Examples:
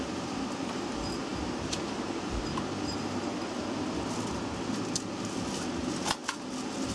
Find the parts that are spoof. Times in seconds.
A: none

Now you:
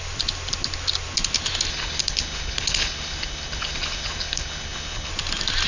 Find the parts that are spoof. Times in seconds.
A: 1.7-5.1

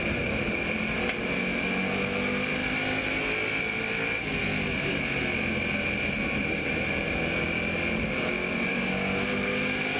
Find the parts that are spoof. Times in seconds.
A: none

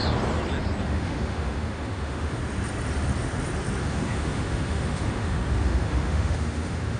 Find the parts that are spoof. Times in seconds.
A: 0.8-2.4; 3.8-7.0

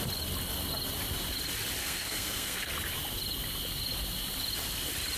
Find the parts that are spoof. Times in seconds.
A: 1.8-2.7

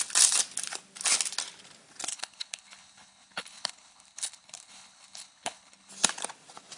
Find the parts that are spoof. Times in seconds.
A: 2.1-5.9

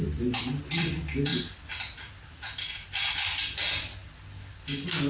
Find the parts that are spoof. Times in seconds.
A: none